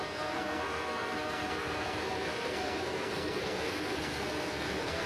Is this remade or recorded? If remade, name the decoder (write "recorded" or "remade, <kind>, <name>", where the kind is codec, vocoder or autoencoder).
remade, codec, SNAC